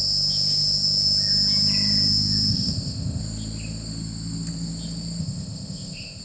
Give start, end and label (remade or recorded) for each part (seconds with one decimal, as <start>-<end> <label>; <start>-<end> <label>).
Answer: 0.0-2.5 recorded; 2.5-3.2 remade; 3.2-5.2 recorded; 5.2-6.2 remade